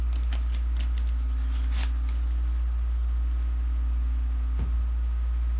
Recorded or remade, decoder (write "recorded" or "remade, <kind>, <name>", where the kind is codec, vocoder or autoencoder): recorded